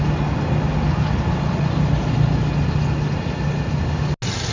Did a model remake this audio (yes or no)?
no